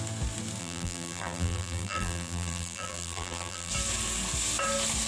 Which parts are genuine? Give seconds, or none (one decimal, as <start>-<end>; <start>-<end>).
0.0-0.6; 3.7-5.1